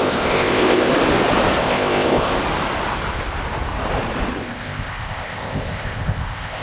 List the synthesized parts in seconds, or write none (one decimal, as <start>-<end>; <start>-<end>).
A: 0.0-0.9; 1.6-2.3; 4.4-6.6